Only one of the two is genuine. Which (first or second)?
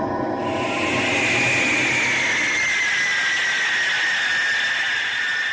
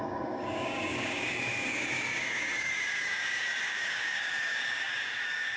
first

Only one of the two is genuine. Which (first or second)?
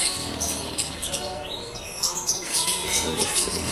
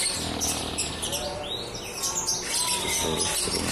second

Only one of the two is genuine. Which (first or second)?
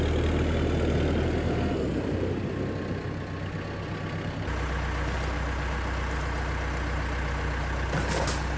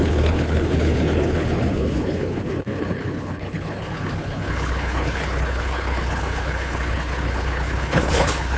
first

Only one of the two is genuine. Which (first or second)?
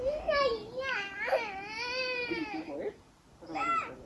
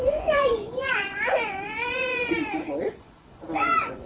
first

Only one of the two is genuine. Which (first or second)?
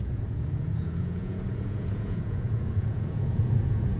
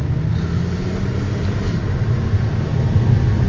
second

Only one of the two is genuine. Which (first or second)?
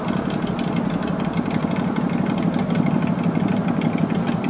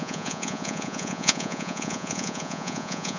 first